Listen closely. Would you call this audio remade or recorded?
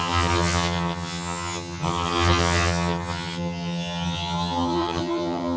remade